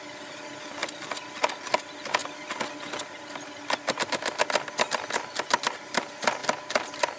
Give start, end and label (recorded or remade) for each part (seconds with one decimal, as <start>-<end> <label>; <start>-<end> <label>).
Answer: 0.0-7.2 recorded